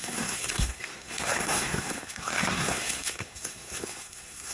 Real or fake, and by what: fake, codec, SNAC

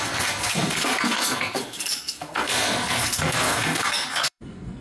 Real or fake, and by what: fake, codec, SNAC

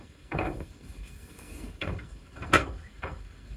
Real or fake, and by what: fake, codec, SNAC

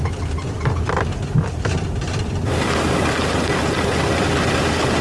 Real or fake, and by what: real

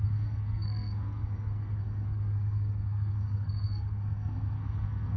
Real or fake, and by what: fake, codec, SNAC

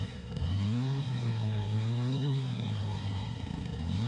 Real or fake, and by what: fake, codec, SNAC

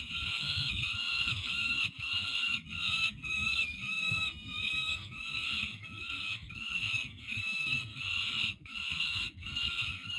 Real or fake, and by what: fake, codec, SNAC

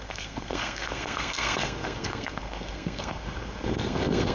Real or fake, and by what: fake, codec, SNAC